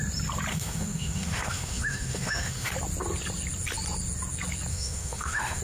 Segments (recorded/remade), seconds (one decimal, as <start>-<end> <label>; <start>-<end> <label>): 0.0-0.5 recorded; 0.5-2.7 remade; 2.7-4.7 recorded; 4.7-5.6 remade